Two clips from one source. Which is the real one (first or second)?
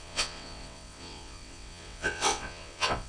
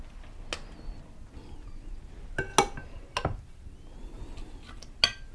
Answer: second